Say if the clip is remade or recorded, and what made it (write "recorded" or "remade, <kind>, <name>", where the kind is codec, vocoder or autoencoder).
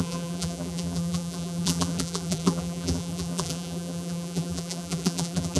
remade, vocoder, BigVGAN v2